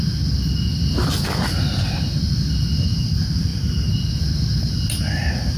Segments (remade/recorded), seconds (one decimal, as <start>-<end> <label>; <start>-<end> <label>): 0.0-5.6 recorded